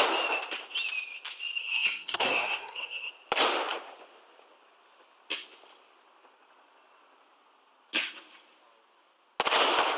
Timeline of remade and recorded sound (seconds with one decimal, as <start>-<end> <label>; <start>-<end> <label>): 0.0-1.6 recorded; 1.6-3.1 remade; 3.1-10.0 recorded